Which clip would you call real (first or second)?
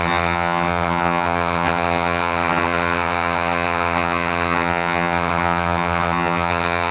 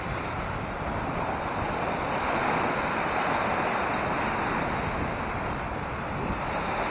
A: second